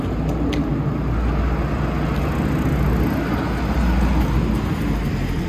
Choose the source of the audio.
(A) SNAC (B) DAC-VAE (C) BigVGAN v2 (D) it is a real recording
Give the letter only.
D